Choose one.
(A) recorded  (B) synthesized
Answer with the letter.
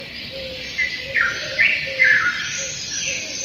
A